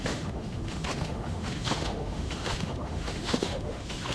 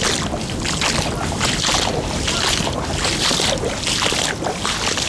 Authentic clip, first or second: second